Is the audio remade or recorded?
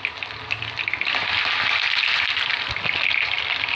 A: recorded